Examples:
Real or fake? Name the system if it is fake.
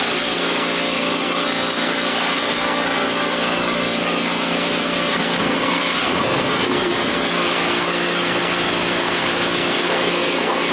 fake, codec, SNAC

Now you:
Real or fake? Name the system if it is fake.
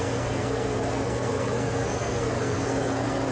fake, codec, SNAC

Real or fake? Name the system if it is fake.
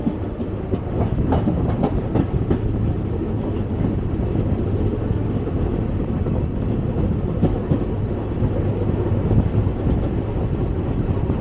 real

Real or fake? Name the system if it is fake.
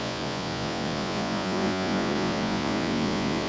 fake, vocoder, Vocos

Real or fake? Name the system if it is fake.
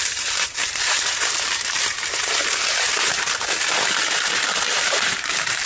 fake, vocoder, BigVGAN v2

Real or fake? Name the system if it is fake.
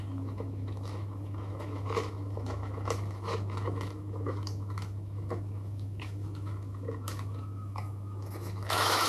fake, autoencoder, DAC-VAE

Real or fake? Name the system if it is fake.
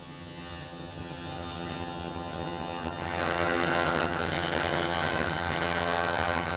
fake, vocoder, HiFi-GAN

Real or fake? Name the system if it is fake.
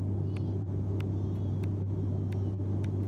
real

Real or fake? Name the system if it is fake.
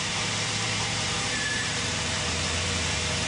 fake, vocoder, BigVGAN v2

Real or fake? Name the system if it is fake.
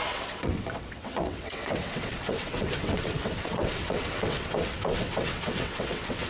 fake, vocoder, WaveNeXt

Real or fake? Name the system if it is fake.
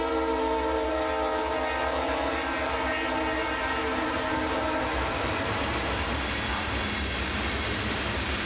fake, vocoder, BigVGAN v2